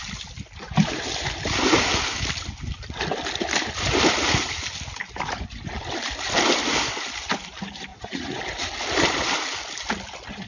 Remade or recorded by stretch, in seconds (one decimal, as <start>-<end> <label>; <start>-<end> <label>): 0.0-7.9 recorded; 7.9-8.4 remade; 8.4-10.5 recorded